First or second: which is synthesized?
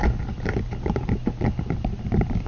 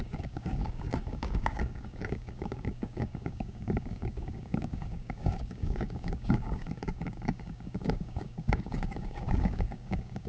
second